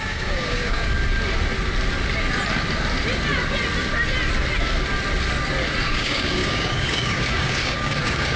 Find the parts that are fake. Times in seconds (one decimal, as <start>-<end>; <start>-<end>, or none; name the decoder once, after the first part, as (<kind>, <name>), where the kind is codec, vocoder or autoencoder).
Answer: 0.0-1.0 (codec, DAC); 5.9-8.4